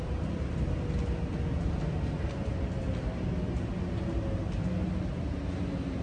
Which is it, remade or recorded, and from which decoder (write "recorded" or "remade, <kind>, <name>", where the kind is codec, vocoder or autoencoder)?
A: recorded